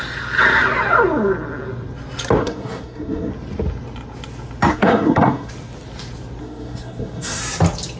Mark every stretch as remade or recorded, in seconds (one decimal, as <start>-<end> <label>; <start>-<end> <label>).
0.0-2.4 recorded; 2.4-3.3 remade; 3.3-4.7 recorded; 4.7-5.5 remade; 5.5-6.4 recorded; 6.4-7.4 remade; 7.4-8.0 recorded